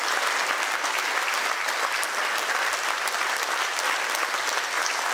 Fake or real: real